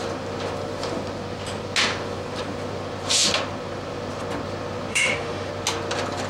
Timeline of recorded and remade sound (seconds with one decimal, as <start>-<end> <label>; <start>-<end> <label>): 0.0-4.9 recorded; 4.9-5.5 remade; 5.5-6.3 recorded